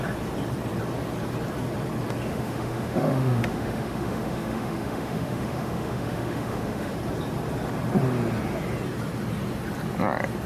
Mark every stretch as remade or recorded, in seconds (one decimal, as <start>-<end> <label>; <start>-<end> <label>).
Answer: 0.0-2.3 recorded; 2.3-6.9 remade; 6.9-10.5 recorded